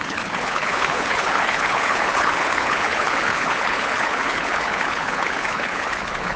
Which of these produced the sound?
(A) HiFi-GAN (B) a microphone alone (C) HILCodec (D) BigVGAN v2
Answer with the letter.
C